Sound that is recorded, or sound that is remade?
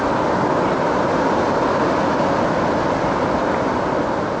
recorded